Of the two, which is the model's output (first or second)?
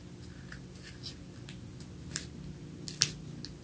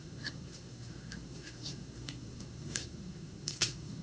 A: second